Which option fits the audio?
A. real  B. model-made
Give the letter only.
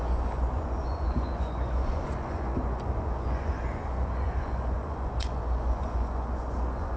B